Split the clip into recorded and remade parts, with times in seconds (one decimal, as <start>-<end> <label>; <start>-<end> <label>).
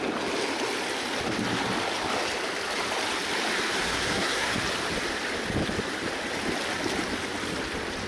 0.0-3.8 recorded; 3.8-4.5 remade; 4.5-8.1 recorded